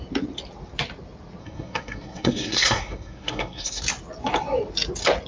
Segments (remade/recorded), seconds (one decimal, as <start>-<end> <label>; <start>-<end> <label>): 0.0-1.4 recorded; 1.4-3.8 remade; 3.8-5.3 recorded